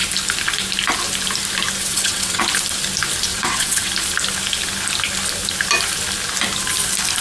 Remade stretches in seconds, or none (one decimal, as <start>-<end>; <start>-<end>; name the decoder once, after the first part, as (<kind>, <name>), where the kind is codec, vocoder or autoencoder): 1.8-2.4 (vocoder, WaveNeXt); 3.3-3.9